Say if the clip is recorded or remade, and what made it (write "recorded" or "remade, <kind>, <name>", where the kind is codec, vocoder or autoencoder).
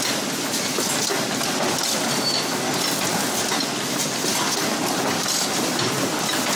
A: recorded